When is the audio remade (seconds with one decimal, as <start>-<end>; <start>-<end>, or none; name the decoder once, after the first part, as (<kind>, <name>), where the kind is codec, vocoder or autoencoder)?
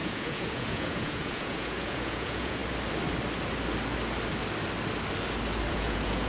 0.0-2.6 (vocoder, Vocos); 5.7-6.3